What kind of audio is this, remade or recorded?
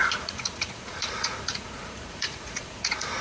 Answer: remade